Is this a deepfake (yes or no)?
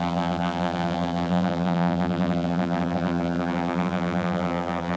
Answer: yes